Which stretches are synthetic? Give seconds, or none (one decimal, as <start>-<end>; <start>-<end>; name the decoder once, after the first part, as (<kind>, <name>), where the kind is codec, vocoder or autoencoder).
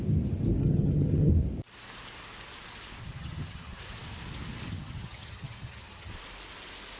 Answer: 0.6-1.3 (vocoder, HiFi-GAN); 3.0-3.8; 4.7-6.1